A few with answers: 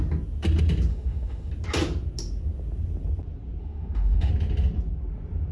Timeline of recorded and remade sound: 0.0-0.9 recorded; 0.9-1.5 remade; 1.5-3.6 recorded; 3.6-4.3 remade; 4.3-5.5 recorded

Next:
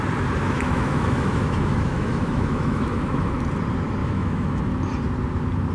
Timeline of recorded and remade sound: 0.0-0.4 recorded; 0.4-3.3 remade; 3.3-4.0 recorded; 4.0-4.6 remade; 4.6-5.7 recorded

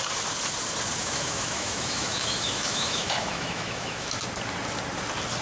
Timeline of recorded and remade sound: 0.0-1.0 recorded; 1.0-4.2 remade; 4.2-5.4 recorded